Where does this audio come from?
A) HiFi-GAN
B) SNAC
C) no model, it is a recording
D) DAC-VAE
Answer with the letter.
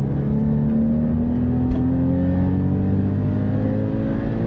C